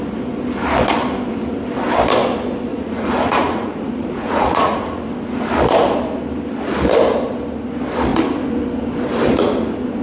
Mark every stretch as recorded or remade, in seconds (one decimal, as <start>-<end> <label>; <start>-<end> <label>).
0.0-2.7 recorded; 2.7-5.0 remade; 5.0-10.0 recorded